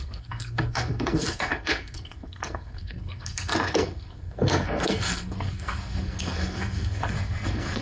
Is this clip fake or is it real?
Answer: fake